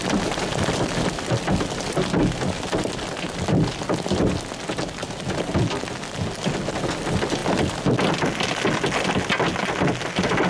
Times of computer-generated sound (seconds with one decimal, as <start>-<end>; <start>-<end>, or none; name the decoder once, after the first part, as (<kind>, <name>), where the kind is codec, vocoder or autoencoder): none